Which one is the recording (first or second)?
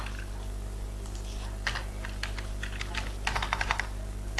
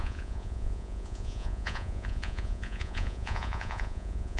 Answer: first